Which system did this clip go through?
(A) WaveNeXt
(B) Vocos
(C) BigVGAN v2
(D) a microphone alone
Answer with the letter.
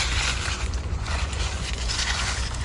B